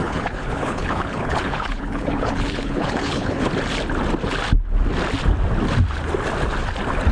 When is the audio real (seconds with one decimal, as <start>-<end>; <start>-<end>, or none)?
3.5-7.1